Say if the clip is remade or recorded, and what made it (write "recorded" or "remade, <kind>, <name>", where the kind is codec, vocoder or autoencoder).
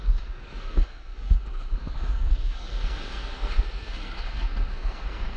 remade, codec, SNAC